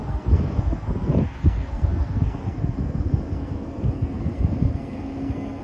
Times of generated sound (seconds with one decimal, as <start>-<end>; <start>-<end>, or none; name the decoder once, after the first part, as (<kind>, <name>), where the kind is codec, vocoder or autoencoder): 0.0-5.6 (codec, SNAC)

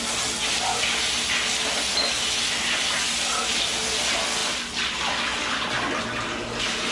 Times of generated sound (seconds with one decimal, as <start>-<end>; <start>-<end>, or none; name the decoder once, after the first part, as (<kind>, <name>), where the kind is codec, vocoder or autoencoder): none

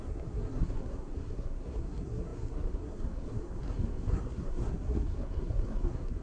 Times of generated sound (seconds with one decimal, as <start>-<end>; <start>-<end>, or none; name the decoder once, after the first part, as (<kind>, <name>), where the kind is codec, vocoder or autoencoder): 0.0-6.2 (codec, SNAC)

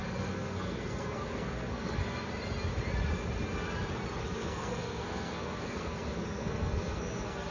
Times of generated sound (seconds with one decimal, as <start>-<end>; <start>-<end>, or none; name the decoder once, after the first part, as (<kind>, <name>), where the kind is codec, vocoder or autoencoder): 0.0-2.0 (codec, SNAC); 4.2-7.5